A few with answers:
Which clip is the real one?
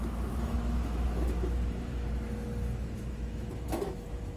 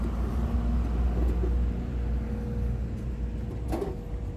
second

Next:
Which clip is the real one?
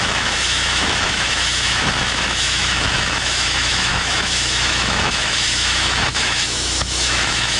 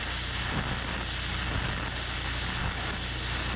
second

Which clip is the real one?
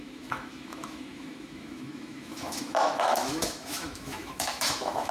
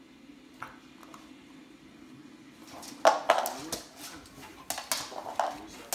second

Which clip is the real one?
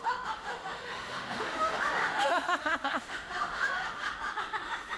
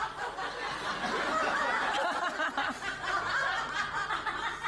second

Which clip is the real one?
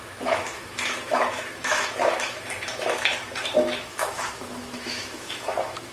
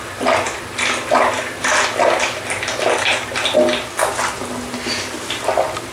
second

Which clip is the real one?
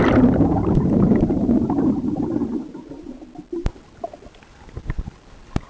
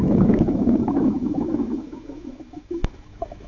first